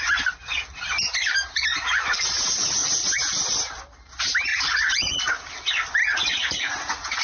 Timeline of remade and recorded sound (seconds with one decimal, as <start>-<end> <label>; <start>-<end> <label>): 0.0-4.5 recorded; 4.5-5.2 remade; 5.2-6.0 recorded; 6.0-7.2 remade